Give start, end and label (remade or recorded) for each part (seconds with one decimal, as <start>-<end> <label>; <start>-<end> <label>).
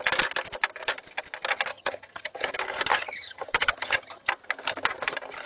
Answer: 0.0-1.7 recorded; 1.7-2.5 remade; 2.5-2.9 recorded; 2.9-4.3 remade; 4.3-5.5 recorded